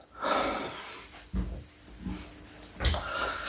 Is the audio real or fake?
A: real